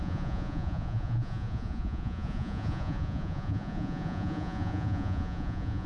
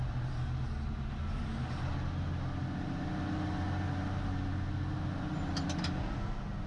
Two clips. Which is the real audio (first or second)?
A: second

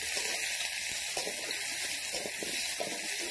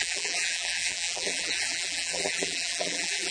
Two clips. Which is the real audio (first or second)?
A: first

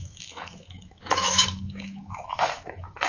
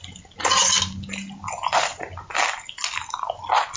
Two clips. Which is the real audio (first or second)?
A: second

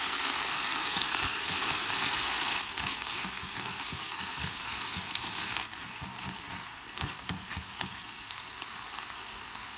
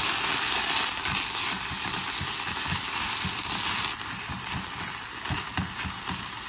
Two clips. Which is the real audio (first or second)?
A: second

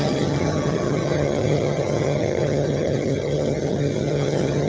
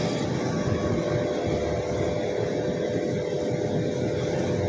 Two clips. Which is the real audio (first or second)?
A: second